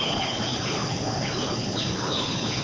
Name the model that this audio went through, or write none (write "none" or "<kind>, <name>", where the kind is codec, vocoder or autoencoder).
codec, HILCodec